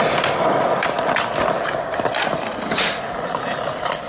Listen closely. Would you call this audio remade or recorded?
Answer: recorded